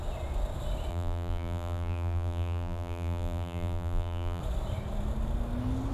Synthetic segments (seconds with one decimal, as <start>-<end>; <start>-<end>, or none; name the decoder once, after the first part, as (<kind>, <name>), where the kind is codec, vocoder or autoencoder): 0.9-4.4 (vocoder, BigVGAN v2)